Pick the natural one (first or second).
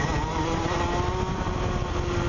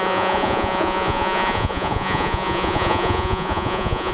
first